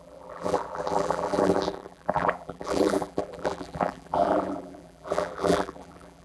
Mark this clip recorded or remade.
remade